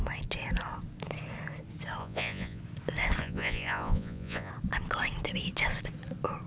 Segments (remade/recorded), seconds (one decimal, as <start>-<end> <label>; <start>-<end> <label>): 0.0-2.0 recorded; 2.0-2.6 remade; 2.6-3.2 recorded; 3.2-4.5 remade; 4.5-6.5 recorded